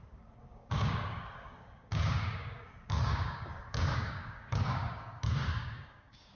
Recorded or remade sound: remade